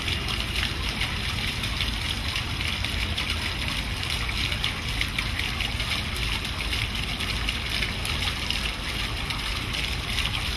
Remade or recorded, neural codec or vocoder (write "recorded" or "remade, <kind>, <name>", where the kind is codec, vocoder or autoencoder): recorded